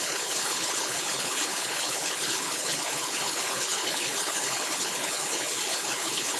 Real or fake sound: fake